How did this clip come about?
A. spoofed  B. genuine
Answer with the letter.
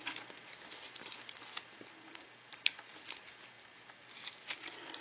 B